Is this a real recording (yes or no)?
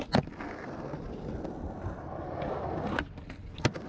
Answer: yes